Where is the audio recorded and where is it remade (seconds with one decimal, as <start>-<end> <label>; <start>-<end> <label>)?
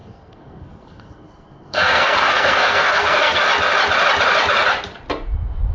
0.0-3.4 remade; 3.4-5.7 recorded